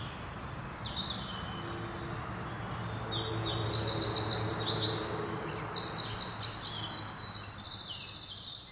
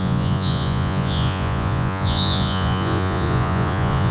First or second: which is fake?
second